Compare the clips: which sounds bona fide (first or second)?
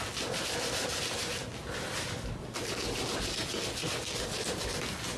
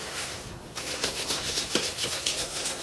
first